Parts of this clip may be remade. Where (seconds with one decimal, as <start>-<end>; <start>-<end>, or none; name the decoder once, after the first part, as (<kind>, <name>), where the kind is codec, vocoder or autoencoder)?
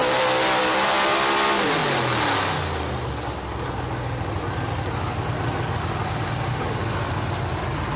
none